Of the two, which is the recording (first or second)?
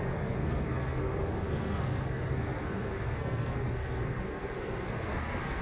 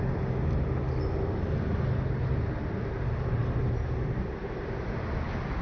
second